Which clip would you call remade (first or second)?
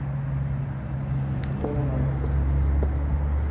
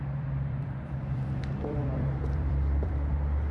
second